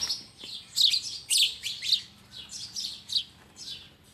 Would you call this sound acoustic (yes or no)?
yes